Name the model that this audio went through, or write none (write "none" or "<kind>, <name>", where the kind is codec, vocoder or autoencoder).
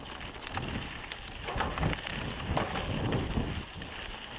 none